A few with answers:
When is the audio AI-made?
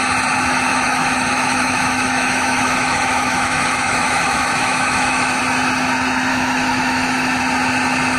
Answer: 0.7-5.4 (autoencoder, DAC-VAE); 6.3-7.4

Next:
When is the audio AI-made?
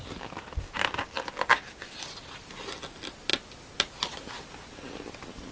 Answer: none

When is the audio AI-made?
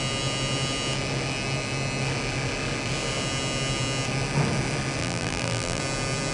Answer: 5.0-5.8 (vocoder, BigVGAN v2)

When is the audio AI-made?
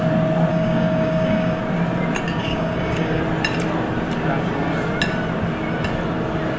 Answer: 0.5-1.6 (codec, DAC); 2.4-3.2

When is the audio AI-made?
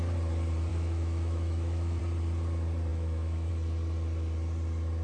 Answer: 0.7-2.0 (autoencoder, DAC-VAE); 2.9-3.5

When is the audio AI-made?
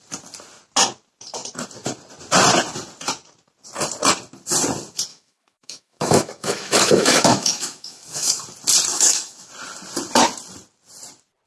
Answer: 5.1-8.4 (autoencoder, DAC-VAE); 8.9-9.5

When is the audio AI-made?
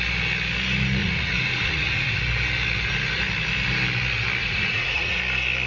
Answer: 1.0-2.2 (vocoder, Vocos); 4.4-5.2